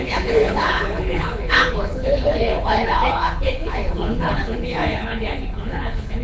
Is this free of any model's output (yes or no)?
no